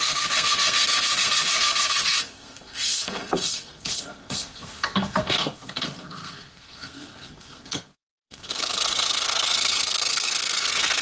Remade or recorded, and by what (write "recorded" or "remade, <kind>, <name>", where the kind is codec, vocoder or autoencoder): remade, codec, SNAC